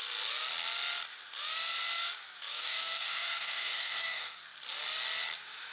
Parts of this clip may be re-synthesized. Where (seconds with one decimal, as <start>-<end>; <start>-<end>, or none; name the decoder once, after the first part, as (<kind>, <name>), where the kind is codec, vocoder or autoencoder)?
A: 2.5-4.4 (codec, DAC)